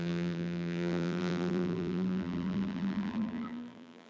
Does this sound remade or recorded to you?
remade